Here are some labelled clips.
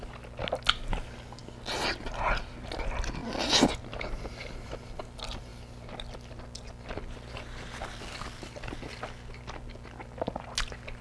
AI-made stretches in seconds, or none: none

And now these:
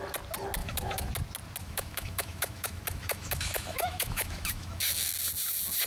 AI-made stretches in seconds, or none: 0.6-1.1 (autoencoder, DAC-VAE); 1.6-5.1